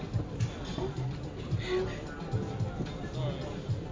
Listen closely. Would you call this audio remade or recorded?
recorded